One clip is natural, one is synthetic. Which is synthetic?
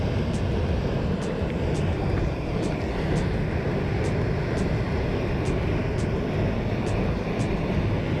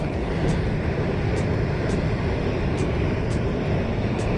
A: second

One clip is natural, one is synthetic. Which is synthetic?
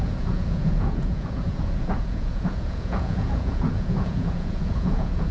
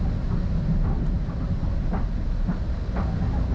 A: first